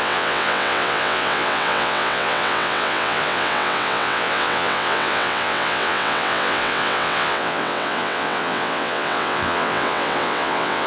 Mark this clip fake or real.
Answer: fake